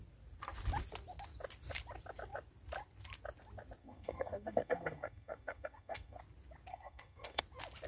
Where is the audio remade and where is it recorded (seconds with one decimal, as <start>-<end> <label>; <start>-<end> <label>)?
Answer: 0.0-3.8 recorded; 3.8-6.2 remade; 6.2-6.7 recorded; 6.7-7.4 remade; 7.4-7.9 recorded